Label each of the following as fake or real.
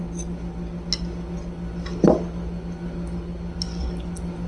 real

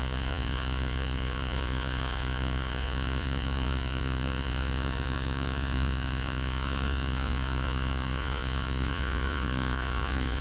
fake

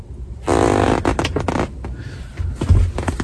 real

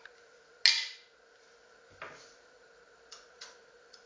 real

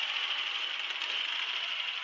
real